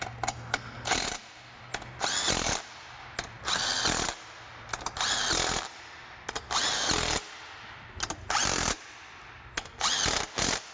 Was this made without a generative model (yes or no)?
yes